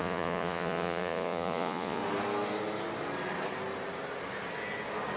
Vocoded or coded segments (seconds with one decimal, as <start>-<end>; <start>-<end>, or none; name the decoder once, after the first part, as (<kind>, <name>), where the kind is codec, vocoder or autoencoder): 0.0-2.0 (vocoder, Vocos)